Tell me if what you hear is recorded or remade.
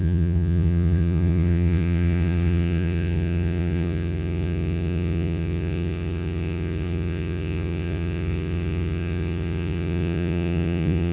remade